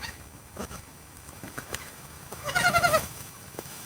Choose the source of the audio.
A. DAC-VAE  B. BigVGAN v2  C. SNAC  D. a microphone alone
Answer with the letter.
A